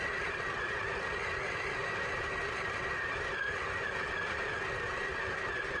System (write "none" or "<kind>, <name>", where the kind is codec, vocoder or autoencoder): none